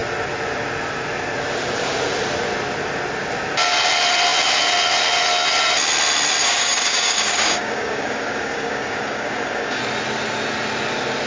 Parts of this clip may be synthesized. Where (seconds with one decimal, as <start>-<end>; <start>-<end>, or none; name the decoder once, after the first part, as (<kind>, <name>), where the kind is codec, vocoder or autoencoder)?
6.4-9.8 (codec, DAC)